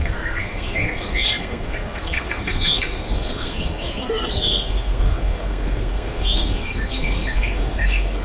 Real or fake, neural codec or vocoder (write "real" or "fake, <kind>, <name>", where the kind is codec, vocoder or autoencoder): fake, codec, SNAC